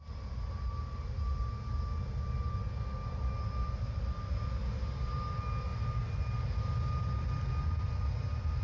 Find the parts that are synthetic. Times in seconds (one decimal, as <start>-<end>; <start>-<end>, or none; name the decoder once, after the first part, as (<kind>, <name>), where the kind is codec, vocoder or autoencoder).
none